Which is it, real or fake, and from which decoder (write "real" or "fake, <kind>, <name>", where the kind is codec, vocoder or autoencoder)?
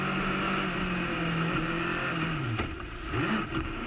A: real